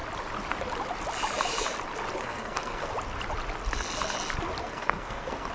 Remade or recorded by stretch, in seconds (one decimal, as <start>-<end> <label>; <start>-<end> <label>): 0.0-2.2 recorded; 2.2-2.9 remade; 2.9-4.6 recorded; 4.6-5.5 remade